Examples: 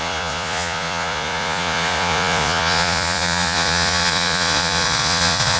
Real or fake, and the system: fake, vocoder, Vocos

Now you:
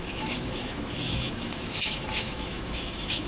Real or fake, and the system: fake, autoencoder, DAC-VAE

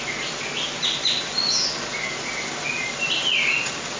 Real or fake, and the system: real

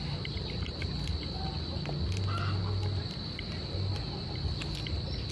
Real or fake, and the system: real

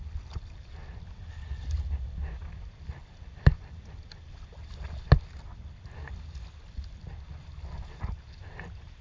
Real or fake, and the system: real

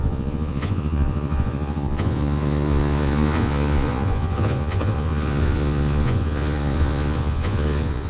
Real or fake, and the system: fake, vocoder, Vocos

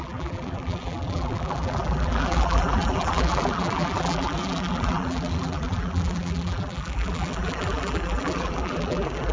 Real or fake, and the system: fake, vocoder, BigVGAN v2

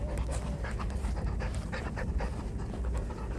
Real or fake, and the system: real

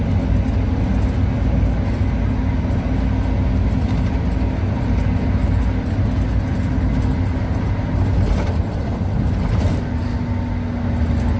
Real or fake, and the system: real